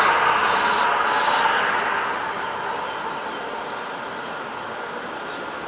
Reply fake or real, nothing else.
real